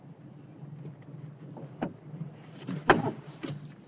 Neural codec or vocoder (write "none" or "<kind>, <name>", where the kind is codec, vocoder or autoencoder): none